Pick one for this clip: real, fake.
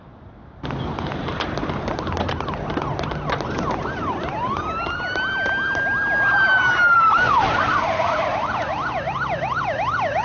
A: real